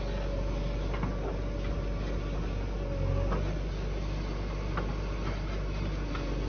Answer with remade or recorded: recorded